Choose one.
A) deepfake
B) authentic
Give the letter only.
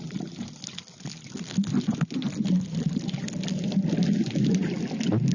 B